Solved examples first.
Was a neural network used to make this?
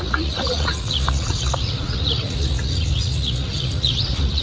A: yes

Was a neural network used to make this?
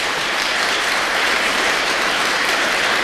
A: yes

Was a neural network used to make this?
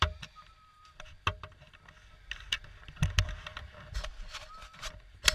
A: no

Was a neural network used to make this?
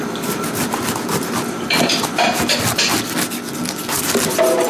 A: no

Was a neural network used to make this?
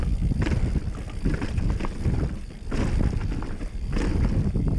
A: no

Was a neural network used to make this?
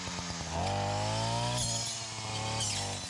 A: no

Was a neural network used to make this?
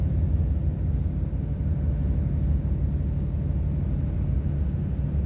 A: no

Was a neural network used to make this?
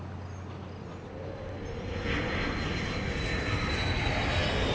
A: no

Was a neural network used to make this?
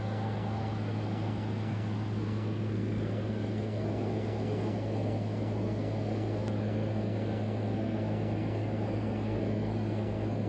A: yes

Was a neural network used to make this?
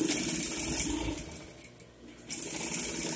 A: no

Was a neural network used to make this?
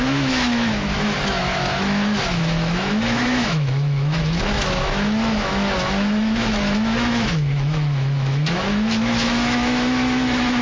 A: yes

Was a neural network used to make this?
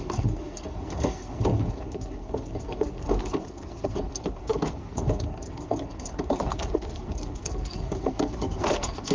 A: yes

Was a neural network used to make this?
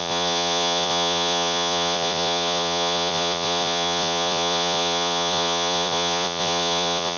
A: yes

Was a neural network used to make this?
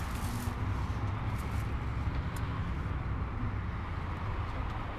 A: no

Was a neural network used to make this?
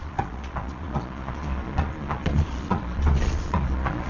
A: yes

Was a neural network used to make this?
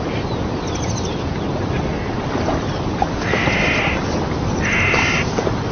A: no